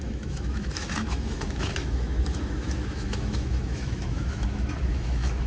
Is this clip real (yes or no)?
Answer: no